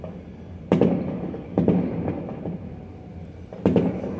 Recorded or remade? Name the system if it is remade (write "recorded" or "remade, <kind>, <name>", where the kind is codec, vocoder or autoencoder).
recorded